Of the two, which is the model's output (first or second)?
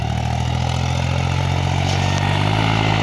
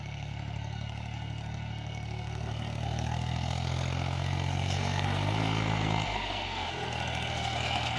second